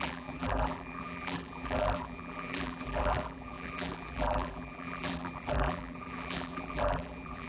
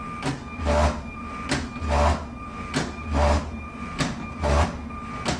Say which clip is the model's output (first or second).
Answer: first